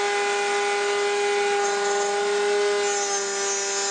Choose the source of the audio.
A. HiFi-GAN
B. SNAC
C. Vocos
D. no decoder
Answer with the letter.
D